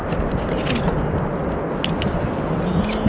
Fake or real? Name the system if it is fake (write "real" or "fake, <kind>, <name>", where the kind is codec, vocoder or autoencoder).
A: real